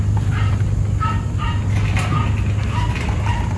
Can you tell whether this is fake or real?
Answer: real